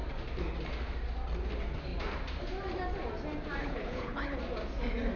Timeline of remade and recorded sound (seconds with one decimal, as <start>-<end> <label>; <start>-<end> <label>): 0.0-3.6 recorded; 3.6-4.4 remade; 4.4-5.2 recorded